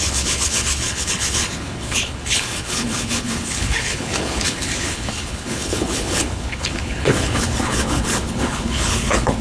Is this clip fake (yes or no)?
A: yes